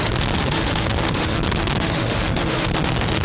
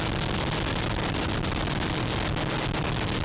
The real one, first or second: second